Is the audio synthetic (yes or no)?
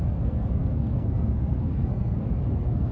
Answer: yes